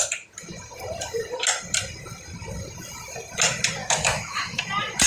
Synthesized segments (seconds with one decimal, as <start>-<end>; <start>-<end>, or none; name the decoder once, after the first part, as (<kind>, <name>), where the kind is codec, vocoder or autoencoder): 3.8-4.6 (autoencoder, DAC-VAE)